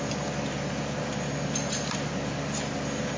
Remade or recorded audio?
recorded